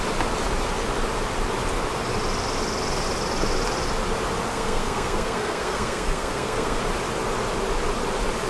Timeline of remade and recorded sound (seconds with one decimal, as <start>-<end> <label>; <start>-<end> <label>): 0.0-4.5 recorded; 4.5-6.8 remade; 6.8-8.5 recorded

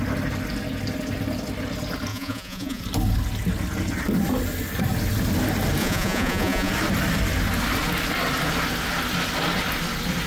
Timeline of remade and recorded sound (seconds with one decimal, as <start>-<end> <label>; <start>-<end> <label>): 0.0-2.1 recorded; 2.1-2.8 remade; 2.8-5.8 recorded; 5.8-6.7 remade; 6.7-10.3 recorded